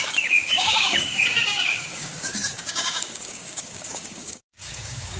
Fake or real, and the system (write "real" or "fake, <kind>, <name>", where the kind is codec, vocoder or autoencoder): fake, codec, DAC